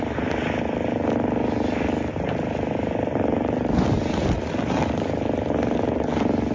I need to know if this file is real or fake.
real